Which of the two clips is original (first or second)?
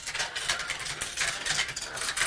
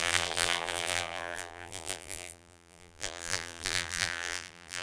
first